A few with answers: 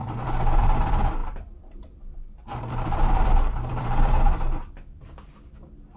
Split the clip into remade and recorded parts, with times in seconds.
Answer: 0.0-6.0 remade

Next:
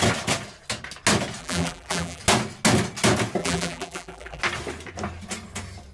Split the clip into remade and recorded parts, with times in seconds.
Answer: 0.0-1.4 recorded; 1.4-2.2 remade; 2.2-3.4 recorded; 3.4-4.4 remade; 4.4-5.9 recorded

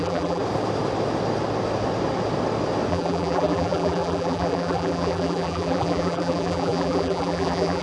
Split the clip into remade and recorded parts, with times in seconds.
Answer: 0.0-0.4 remade; 0.4-2.9 recorded; 2.9-7.8 remade

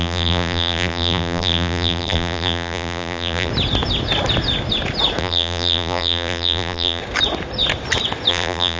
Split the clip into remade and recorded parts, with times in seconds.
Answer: 0.0-3.5 remade; 3.5-5.2 recorded; 5.2-7.0 remade; 7.0-8.3 recorded; 8.3-8.8 remade

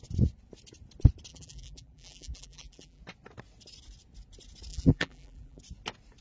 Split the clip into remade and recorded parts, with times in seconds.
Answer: 0.0-1.3 recorded; 1.3-3.0 remade; 3.0-4.7 recorded; 4.7-5.6 remade; 5.6-6.2 recorded

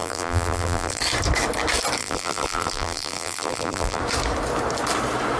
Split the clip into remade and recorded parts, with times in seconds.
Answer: 0.0-1.0 remade; 1.0-2.0 recorded; 2.0-4.0 remade; 4.0-5.4 recorded

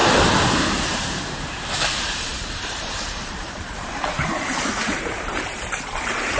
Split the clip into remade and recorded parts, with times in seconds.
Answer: 0.0-0.7 recorded; 0.7-6.4 remade